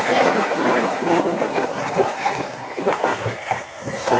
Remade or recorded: remade